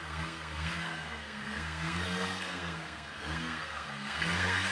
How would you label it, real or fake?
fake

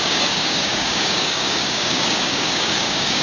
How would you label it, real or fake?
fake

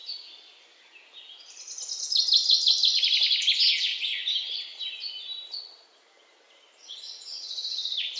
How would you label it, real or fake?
real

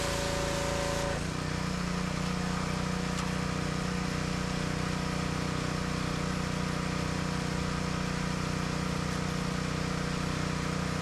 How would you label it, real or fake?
real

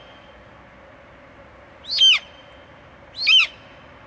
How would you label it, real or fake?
real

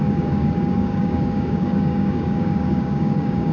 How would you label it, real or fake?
fake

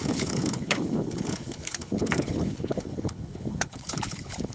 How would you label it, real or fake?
fake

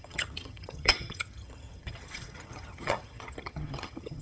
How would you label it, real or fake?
fake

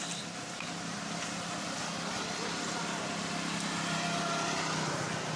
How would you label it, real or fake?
real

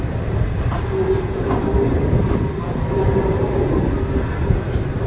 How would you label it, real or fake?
real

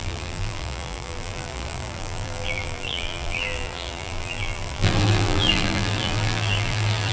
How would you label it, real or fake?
fake